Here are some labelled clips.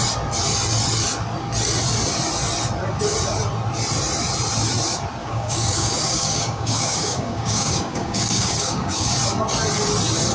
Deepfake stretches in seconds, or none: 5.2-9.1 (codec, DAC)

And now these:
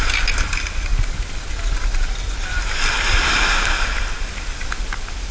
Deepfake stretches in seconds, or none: none

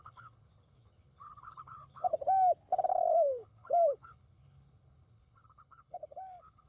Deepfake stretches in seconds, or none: 0.0-2.1 (codec, HILCodec); 2.9-6.7

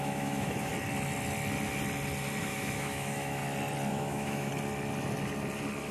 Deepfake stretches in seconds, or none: 0.0-0.7 (autoencoder, DAC-VAE); 2.4-3.4; 3.9-4.5

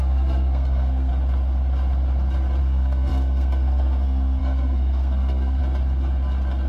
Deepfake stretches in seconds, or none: 0.0-1.1 (codec, SNAC); 2.6-5.6

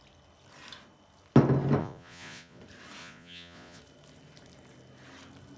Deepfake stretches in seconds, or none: 1.8-2.6 (vocoder, Vocos); 3.0-3.8

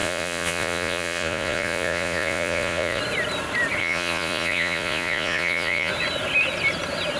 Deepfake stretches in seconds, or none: 0.0-3.0 (vocoder, Vocos); 3.8-5.9